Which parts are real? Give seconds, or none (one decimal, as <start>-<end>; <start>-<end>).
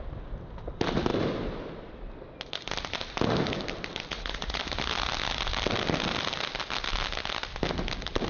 0.0-4.1; 4.6-8.3